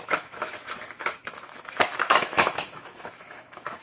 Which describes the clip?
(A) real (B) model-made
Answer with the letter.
B